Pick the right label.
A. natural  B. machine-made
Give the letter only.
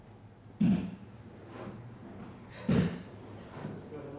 A